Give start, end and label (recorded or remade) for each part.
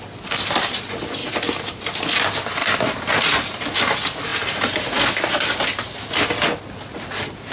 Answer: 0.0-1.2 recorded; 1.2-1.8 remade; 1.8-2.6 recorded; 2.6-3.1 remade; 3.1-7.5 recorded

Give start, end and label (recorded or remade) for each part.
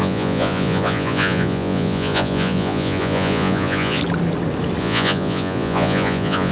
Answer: 0.0-4.0 remade; 4.0-4.8 recorded; 4.8-6.5 remade